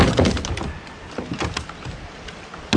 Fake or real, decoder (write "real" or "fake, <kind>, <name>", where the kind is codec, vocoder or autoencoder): real